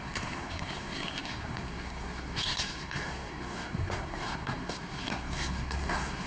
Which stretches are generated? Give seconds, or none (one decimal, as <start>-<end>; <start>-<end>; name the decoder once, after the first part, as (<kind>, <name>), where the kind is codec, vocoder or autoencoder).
0.0-6.3 (codec, SNAC)